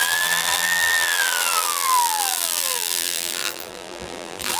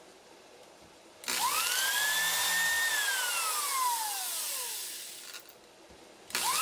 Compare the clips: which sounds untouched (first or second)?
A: second